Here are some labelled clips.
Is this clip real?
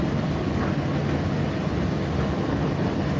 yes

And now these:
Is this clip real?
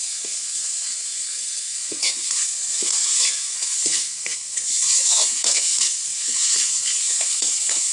no